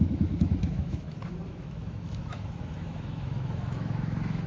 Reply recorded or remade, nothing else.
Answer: remade